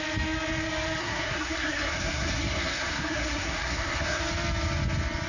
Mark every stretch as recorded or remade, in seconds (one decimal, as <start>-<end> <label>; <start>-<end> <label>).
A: 0.0-1.0 recorded; 1.0-4.2 remade; 4.2-5.3 recorded